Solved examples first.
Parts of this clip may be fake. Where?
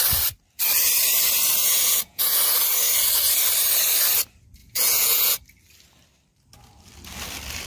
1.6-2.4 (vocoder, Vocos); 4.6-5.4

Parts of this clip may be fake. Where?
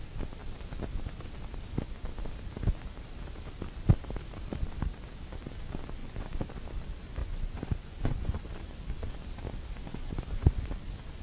6.0-6.5 (vocoder, Vocos); 7.2-8.5; 9.9-10.7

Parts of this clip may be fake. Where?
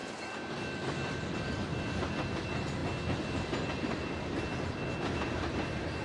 none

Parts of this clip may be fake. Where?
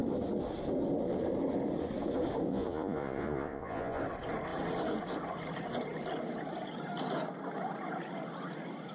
2.5-4.0 (vocoder, Vocos)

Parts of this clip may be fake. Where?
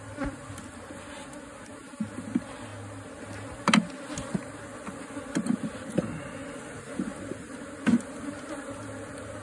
none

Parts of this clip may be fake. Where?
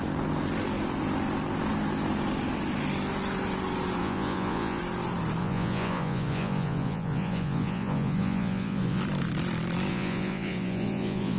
4.0-4.8 (vocoder, Vocos); 5.4-9.0; 9.9-11.4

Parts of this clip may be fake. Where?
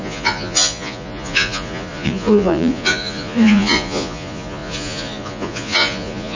0.0-6.3 (vocoder, Vocos)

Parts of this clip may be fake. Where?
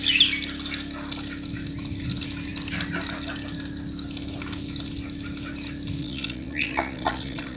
6.0-7.6 (vocoder, Vocos)